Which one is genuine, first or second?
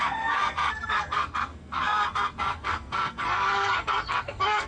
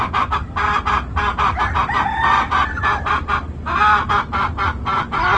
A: second